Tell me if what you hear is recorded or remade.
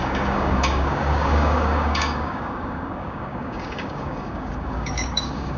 remade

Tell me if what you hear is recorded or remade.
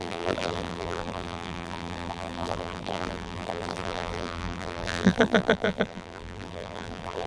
remade